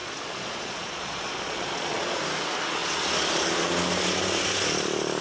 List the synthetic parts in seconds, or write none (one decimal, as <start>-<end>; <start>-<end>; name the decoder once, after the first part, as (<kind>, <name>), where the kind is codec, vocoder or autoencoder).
0.0-2.2 (vocoder, Vocos)